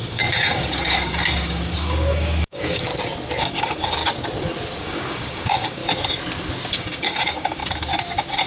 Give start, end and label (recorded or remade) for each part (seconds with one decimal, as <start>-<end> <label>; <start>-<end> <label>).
0.0-2.9 remade; 2.9-3.4 recorded; 3.4-4.0 remade; 4.0-4.8 recorded; 4.8-5.8 remade; 5.8-6.7 recorded; 6.7-7.6 remade; 7.6-8.5 recorded